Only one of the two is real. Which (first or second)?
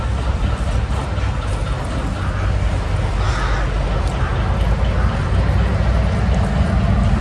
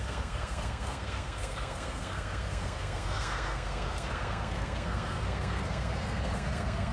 first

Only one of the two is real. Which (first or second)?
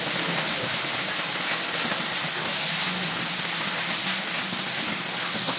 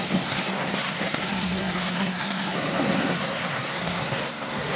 first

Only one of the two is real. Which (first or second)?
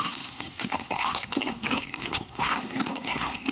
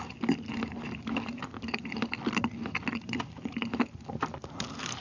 second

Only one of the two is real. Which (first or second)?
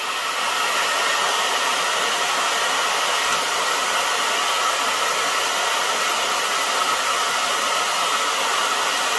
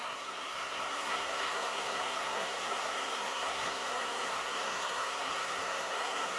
first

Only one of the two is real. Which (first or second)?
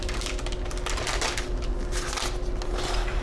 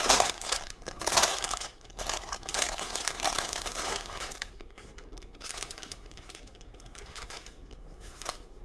first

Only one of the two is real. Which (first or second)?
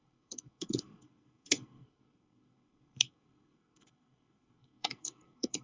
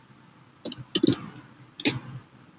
second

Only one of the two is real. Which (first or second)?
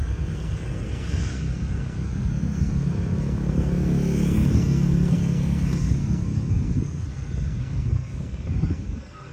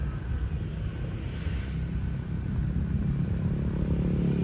second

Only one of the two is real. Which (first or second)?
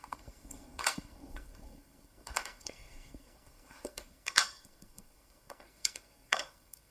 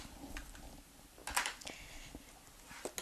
second